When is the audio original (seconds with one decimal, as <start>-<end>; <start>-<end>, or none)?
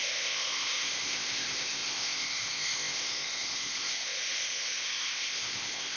none